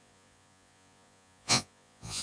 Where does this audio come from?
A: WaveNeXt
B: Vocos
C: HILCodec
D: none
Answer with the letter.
B